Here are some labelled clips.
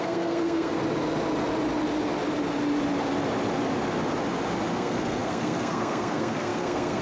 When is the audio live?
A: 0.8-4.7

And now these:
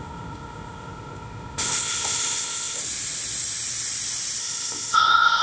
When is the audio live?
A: 2.8-4.4

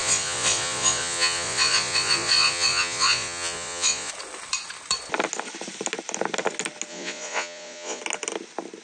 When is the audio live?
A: 4.1-6.9; 8.0-8.8

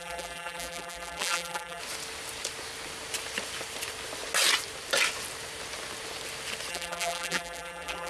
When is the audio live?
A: 1.8-6.7

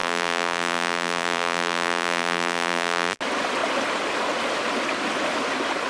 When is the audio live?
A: 3.2-5.9